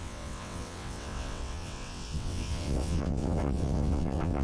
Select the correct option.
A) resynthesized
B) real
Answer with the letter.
A